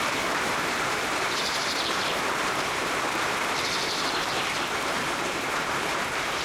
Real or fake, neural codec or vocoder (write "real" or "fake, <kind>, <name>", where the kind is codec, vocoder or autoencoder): fake, vocoder, BigVGAN v2